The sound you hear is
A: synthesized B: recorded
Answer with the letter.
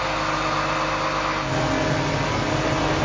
B